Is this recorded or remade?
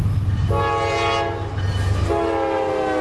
recorded